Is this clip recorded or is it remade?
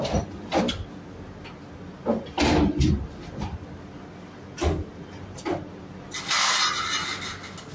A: recorded